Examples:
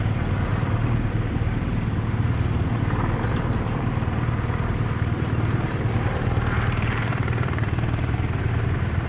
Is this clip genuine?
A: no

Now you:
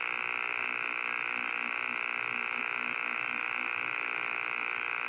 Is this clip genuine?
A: yes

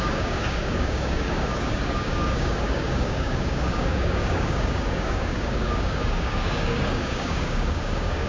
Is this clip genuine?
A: no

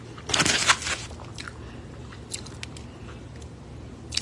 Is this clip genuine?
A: yes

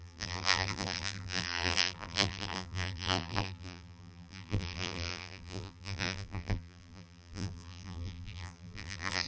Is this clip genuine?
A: no